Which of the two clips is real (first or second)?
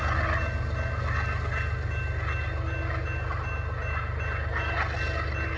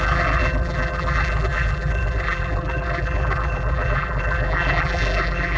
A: first